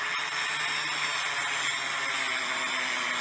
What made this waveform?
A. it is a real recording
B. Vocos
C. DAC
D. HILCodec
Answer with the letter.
A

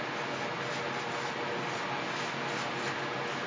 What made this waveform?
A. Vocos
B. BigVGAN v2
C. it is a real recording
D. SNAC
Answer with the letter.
C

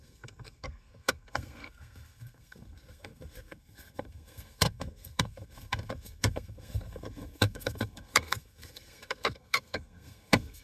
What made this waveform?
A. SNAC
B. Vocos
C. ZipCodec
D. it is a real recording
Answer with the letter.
A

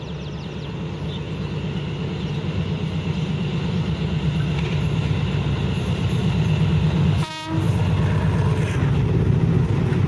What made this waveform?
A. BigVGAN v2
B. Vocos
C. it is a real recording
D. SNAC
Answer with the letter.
C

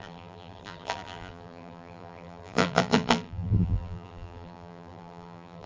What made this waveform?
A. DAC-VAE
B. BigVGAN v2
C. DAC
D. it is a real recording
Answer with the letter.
B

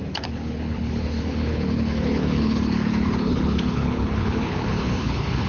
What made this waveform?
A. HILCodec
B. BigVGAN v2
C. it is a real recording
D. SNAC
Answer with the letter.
A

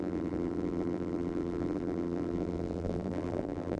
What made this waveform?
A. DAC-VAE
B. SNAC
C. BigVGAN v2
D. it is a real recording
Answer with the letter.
C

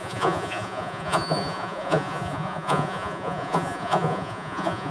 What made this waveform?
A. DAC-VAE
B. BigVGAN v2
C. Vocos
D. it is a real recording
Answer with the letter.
C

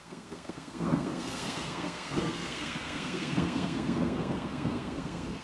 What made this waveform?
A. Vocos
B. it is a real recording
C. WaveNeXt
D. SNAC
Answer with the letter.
D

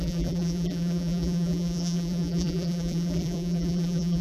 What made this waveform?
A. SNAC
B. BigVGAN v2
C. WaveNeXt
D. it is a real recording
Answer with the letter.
B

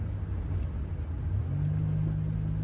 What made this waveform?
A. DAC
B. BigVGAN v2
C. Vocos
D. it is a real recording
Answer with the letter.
D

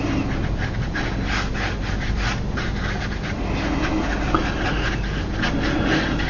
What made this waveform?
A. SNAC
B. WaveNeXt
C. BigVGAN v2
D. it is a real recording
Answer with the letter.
D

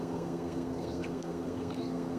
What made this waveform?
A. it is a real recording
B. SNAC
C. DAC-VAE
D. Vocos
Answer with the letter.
B